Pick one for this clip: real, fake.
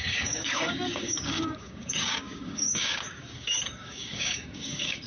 fake